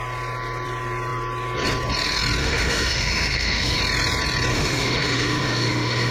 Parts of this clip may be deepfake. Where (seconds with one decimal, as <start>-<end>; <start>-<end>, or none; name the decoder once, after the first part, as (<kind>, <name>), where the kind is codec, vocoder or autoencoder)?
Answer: 2.4-3.8 (autoencoder, DAC-VAE); 4.5-6.1

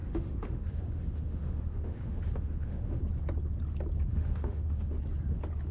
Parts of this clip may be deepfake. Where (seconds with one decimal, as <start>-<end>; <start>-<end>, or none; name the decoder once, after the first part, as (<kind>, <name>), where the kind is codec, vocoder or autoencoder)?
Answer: 0.0-3.0 (autoencoder, DAC-VAE); 4.1-5.0

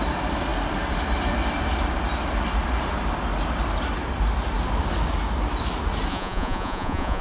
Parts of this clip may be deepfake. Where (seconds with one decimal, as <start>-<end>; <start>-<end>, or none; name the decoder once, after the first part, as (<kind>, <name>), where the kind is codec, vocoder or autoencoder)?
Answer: 6.1-7.2 (vocoder, Vocos)

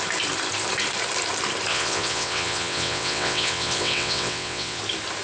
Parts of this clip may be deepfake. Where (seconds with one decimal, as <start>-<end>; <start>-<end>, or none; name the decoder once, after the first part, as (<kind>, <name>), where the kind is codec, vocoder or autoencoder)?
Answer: 1.7-4.8 (vocoder, WaveNeXt)

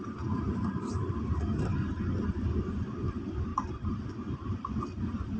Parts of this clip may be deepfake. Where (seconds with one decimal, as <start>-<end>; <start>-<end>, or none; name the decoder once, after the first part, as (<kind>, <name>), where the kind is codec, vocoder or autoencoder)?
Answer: 0.0-1.7 (vocoder, BigVGAN v2); 2.6-5.4

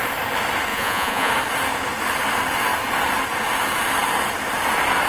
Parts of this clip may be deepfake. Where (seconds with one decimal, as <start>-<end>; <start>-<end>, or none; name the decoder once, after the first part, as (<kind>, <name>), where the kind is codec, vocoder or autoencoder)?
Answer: 0.7-1.3 (vocoder, Vocos)

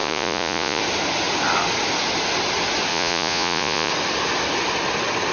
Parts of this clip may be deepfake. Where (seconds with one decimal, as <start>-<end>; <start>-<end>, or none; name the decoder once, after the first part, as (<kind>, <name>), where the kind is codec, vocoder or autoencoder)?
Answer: 0.0-0.8 (vocoder, Vocos); 2.9-3.9

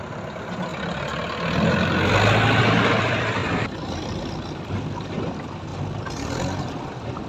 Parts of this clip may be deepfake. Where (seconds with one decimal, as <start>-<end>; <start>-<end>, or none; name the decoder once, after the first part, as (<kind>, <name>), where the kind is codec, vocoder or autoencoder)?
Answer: 0.0-0.7 (vocoder, BigVGAN v2); 2.7-5.7; 6.8-7.3